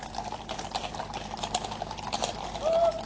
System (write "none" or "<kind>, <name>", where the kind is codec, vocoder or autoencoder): none